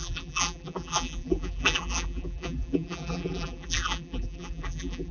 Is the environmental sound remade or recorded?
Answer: remade